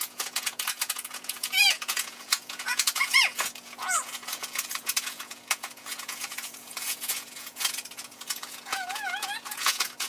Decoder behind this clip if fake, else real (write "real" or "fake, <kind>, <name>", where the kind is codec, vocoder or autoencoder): fake, vocoder, Vocos